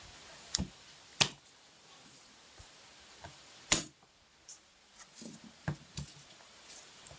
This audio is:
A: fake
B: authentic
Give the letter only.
A